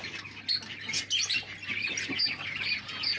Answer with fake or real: real